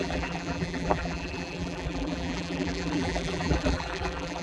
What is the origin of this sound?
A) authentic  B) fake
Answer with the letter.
B